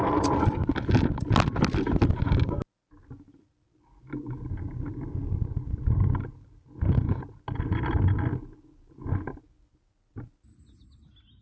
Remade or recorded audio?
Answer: recorded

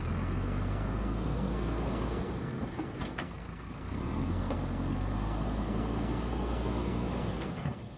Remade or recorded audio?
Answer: remade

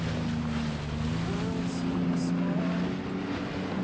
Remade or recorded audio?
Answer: recorded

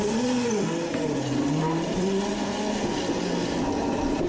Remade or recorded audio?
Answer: recorded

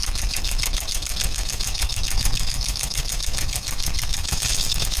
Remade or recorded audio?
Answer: remade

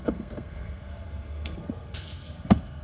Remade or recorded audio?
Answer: remade